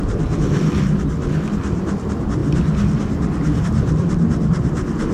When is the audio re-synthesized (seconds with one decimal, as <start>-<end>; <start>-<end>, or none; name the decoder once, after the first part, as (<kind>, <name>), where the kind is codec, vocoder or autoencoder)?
none